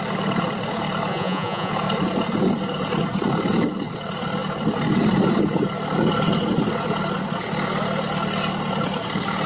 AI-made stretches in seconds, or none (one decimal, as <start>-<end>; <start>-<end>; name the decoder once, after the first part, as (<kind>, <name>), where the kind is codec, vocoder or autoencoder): 1.1-1.7 (vocoder, Vocos)